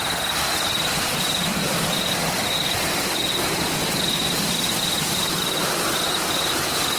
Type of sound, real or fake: real